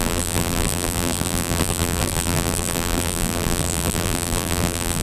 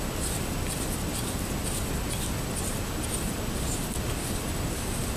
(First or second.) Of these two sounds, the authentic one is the second